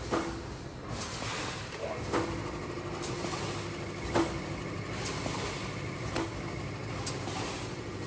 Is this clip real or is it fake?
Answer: real